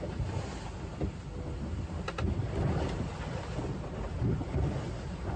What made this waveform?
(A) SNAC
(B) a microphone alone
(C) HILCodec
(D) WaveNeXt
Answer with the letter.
B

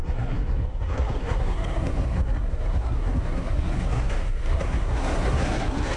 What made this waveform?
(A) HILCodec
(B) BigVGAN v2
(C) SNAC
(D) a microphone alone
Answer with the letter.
C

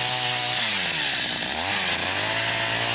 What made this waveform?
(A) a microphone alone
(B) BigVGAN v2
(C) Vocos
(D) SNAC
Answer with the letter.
A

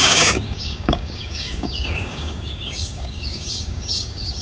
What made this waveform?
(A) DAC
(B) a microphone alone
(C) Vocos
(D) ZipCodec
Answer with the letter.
A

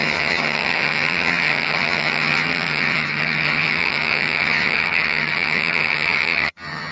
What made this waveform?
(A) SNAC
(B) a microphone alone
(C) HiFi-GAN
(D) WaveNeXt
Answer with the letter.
C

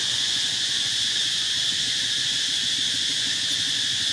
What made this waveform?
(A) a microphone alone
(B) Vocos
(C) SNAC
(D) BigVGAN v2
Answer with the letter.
B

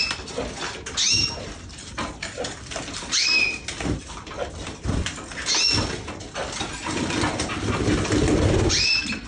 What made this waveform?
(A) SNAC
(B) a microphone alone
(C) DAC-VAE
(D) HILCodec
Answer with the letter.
B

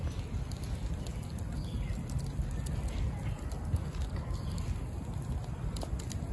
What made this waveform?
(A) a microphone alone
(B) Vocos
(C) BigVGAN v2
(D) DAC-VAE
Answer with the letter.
A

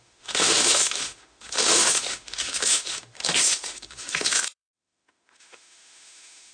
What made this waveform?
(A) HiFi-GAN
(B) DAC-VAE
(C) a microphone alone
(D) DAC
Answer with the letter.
B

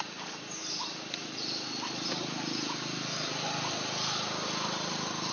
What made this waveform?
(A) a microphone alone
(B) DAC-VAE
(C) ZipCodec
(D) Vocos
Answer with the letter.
A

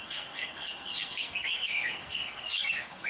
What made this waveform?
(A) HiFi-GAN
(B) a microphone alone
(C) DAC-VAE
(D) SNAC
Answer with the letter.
D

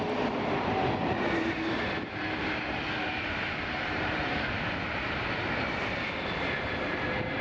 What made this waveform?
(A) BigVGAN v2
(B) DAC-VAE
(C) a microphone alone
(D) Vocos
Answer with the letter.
A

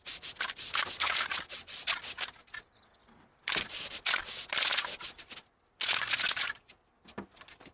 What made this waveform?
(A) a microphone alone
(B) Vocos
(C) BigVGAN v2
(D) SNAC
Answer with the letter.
A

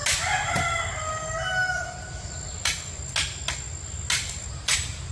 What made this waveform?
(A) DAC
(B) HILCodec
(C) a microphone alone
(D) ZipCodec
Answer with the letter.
C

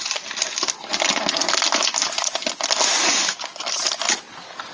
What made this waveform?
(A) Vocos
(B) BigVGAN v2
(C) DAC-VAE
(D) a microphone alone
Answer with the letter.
D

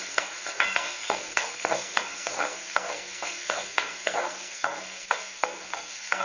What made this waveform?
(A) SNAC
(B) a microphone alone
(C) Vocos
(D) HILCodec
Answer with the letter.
A